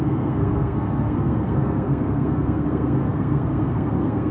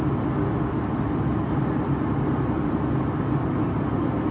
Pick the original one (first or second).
second